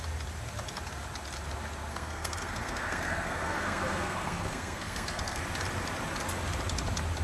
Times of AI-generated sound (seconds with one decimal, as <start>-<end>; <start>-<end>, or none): 1.9-5.4